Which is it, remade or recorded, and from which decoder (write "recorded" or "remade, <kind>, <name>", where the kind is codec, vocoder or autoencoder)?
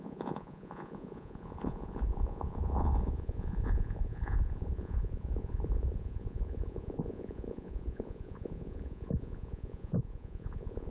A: remade, vocoder, Vocos